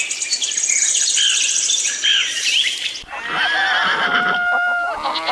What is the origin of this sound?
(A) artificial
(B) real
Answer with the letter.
B